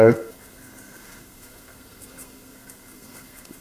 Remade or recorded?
remade